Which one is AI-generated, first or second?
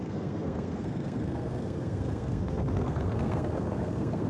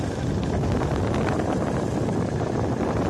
first